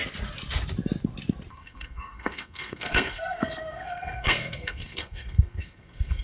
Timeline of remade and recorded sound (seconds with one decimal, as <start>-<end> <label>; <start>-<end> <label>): 0.0-1.5 recorded; 1.5-6.2 remade